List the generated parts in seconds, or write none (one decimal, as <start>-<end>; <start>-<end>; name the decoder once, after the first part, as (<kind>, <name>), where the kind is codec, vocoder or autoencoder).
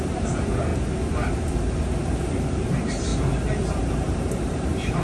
0.0-0.7 (vocoder, BigVGAN v2); 2.0-3.1; 3.8-5.0